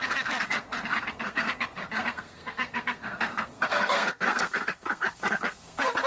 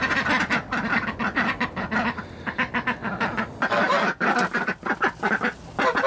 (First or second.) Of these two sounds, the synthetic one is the first